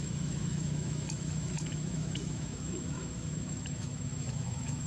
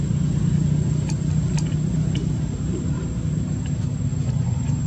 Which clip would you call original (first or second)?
second